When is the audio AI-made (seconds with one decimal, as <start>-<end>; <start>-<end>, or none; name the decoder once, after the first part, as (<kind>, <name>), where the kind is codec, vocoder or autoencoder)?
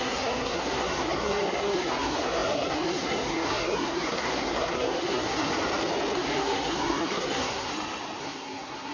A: 0.0-5.5 (codec, SNAC); 6.1-7.7; 8.2-8.9